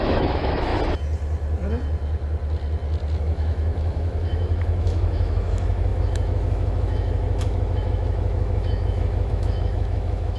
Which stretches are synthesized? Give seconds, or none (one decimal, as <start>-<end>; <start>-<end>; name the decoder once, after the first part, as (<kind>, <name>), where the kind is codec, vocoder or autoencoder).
0.0-0.7 (autoencoder, DAC-VAE); 3.2-10.4